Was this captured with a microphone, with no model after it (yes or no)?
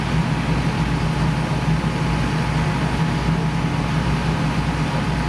yes